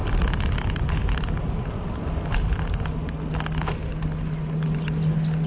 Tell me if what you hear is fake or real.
real